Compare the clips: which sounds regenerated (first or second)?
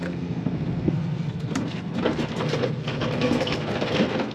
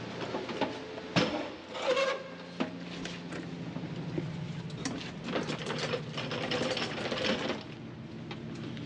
first